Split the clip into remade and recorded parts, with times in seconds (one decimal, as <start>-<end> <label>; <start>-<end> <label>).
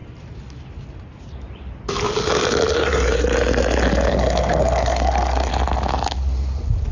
0.0-4.1 recorded; 4.1-5.5 remade; 5.5-6.9 recorded